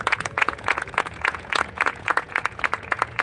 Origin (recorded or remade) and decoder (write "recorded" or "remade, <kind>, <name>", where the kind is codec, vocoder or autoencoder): remade, vocoder, Vocos